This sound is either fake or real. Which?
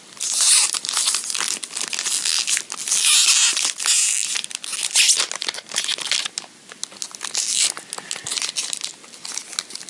real